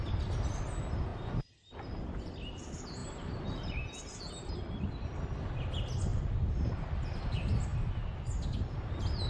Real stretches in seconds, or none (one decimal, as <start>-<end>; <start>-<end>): 0.0-3.0; 4.2-6.1; 6.8-9.3